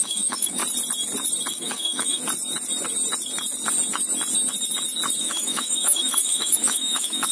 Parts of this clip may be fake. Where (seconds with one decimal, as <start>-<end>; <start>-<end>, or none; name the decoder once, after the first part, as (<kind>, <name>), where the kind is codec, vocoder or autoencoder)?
0.0-0.6 (autoencoder, DAC-VAE); 1.5-2.2; 5.2-7.3